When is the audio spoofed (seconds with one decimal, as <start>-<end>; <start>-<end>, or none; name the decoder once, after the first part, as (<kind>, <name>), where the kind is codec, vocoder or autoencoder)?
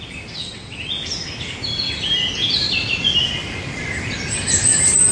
0.4-0.9 (vocoder, WaveNeXt)